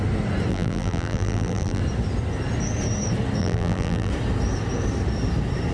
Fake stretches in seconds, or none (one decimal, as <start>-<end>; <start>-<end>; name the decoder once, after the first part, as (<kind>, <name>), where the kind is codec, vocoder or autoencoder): 0.5-1.8 (vocoder, BigVGAN v2); 3.4-4.1